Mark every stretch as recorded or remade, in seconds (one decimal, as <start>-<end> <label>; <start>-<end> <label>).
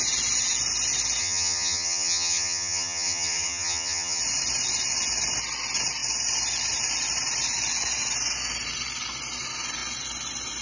0.0-1.2 recorded; 1.2-4.2 remade; 4.2-10.6 recorded